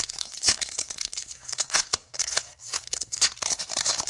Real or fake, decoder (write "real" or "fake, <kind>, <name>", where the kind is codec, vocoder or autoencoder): fake, codec, SNAC